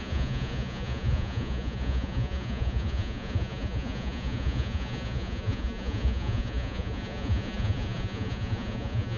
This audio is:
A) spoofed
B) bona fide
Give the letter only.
A